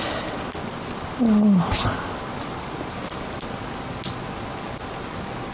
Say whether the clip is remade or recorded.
recorded